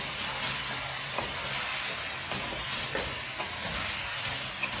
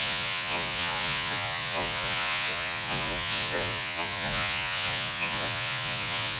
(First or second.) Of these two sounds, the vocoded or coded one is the second